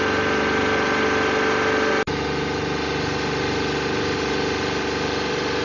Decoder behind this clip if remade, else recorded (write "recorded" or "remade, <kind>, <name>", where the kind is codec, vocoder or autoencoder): recorded